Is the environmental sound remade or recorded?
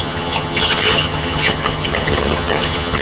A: remade